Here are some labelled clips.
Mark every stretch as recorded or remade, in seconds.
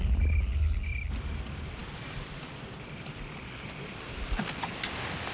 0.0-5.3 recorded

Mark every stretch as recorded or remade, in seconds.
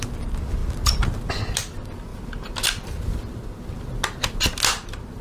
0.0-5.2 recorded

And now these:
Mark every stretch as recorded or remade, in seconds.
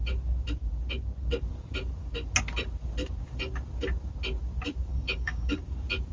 0.0-4.9 recorded; 4.9-5.6 remade; 5.6-6.1 recorded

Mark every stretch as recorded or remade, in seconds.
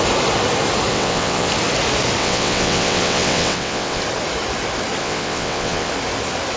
0.0-0.9 recorded; 0.9-1.5 remade; 1.5-2.2 recorded; 2.2-4.0 remade; 4.0-5.0 recorded; 5.0-5.9 remade; 5.9-6.6 recorded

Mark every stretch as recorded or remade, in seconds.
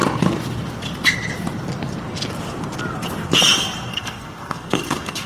0.0-3.9 recorded; 3.9-5.3 remade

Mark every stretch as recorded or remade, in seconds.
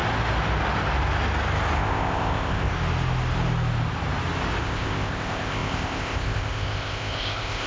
0.0-1.8 recorded; 1.8-2.7 remade; 2.7-4.6 recorded; 4.6-7.7 remade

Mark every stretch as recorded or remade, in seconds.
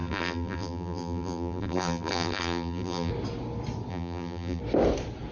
0.0-3.1 remade; 3.1-3.9 recorded; 3.9-4.6 remade; 4.6-5.3 recorded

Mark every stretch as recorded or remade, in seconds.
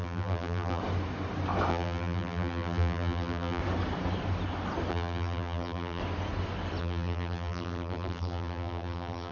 0.0-0.8 remade; 0.8-1.7 recorded; 1.7-3.6 remade; 3.6-4.9 recorded; 4.9-6.0 remade; 6.0-6.8 recorded; 6.8-9.3 remade